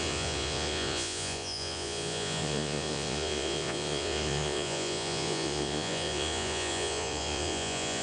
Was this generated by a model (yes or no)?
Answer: yes